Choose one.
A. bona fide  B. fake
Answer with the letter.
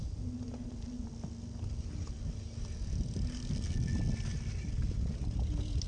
A